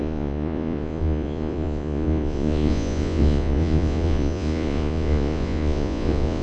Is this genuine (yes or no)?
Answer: no